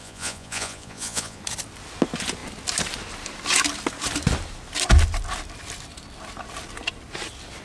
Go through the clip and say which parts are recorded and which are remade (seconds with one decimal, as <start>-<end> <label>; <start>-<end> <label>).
0.0-1.4 remade; 1.4-7.6 recorded